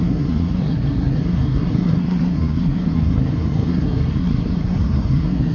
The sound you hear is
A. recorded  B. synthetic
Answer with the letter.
B